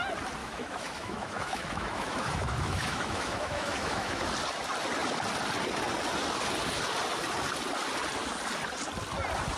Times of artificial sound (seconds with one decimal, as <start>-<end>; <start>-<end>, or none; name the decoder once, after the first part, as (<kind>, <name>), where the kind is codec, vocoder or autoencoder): 0.4-4.2 (autoencoder, DAC-VAE)